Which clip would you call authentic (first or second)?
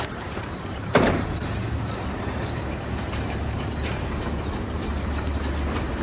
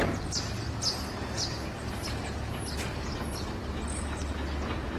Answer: second